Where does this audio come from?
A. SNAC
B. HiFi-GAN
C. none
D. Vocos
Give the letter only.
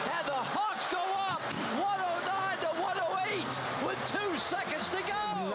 C